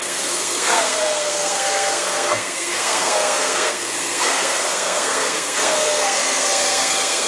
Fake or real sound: fake